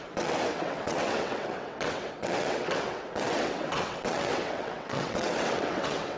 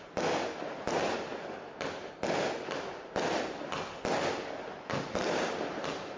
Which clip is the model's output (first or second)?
first